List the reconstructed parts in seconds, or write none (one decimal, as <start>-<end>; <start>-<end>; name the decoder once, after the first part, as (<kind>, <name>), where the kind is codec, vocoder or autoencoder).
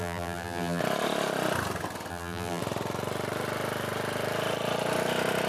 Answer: 0.0-0.8 (vocoder, BigVGAN v2); 2.1-2.6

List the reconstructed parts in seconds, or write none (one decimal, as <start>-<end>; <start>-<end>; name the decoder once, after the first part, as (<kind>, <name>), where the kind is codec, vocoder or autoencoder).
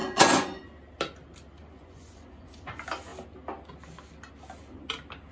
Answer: 0.0-0.6 (vocoder, Vocos); 1.6-2.5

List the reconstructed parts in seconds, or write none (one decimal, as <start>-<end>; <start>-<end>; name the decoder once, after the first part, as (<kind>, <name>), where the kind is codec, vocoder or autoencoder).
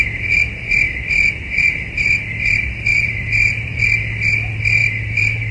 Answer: 2.9-3.8 (vocoder, BigVGAN v2); 4.8-5.5